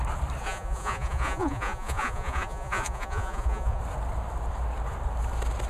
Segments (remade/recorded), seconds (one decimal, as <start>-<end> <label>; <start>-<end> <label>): 0.0-0.4 recorded; 0.4-3.8 remade; 3.8-5.7 recorded

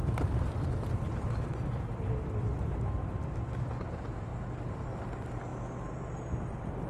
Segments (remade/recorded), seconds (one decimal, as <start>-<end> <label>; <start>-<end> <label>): 0.0-6.9 recorded

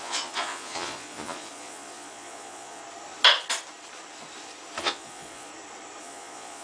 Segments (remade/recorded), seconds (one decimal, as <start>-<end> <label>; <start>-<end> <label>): 0.0-2.8 remade; 2.8-4.8 recorded; 4.8-5.5 remade; 5.5-6.0 recorded; 6.0-6.6 remade

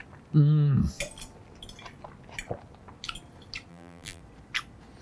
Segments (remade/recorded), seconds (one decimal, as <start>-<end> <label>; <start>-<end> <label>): 0.0-3.7 recorded; 3.7-4.2 remade; 4.2-5.0 recorded

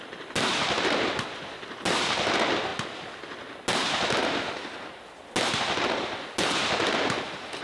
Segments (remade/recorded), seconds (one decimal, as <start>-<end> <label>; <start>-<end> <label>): 0.0-7.6 recorded

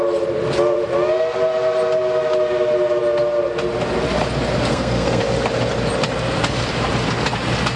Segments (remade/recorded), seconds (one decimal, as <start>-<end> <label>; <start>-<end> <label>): 0.0-4.7 recorded; 4.7-5.2 remade; 5.2-7.8 recorded

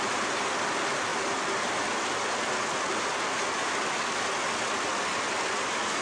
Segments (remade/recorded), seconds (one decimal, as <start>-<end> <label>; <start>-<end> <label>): 0.0-6.0 recorded

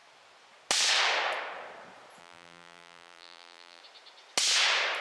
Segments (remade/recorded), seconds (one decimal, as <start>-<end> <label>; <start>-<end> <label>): 0.0-2.2 recorded; 2.2-3.8 remade; 3.8-5.0 recorded